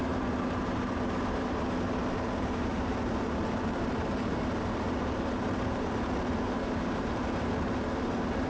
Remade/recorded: remade